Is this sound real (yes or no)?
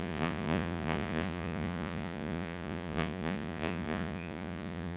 no